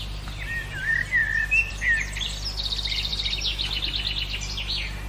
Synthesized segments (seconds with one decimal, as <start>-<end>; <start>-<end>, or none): none